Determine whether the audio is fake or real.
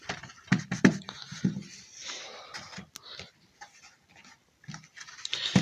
real